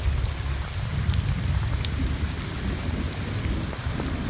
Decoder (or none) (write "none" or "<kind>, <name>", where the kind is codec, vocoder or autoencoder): none